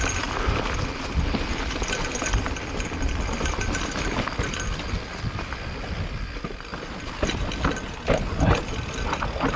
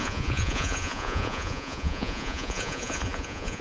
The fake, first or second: second